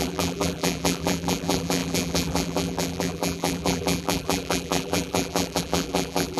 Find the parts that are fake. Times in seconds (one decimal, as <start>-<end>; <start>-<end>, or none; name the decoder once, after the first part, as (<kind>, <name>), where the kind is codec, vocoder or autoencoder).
0.0-6.4 (vocoder, BigVGAN v2)